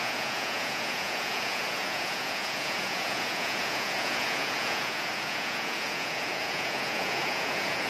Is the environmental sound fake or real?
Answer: fake